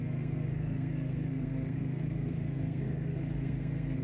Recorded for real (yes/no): no